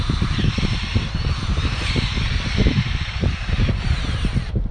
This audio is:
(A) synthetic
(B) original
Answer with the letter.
A